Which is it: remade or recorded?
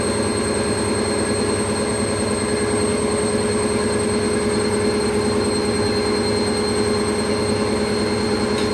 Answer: recorded